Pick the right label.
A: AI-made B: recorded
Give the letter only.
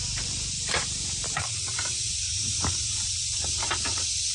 A